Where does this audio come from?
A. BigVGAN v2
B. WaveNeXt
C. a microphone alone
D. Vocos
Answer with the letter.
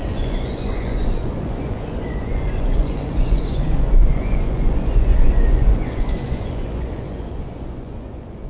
D